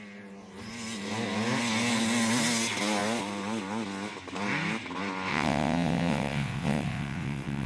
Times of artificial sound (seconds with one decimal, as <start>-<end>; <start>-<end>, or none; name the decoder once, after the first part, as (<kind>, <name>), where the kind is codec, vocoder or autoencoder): 5.3-7.7 (vocoder, WaveNeXt)